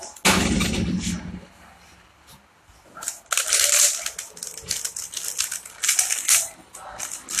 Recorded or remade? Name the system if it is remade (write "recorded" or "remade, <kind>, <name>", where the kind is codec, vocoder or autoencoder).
recorded